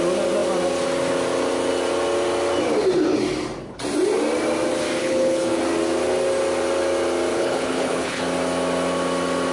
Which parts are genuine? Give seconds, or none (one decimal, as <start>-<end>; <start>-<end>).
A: 0.0-5.0; 5.6-7.3; 8.2-9.5